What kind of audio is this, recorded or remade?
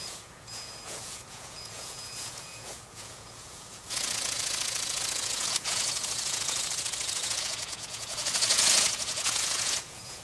remade